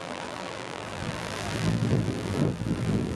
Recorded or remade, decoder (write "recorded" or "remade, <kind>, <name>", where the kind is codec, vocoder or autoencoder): remade, vocoder, BigVGAN v2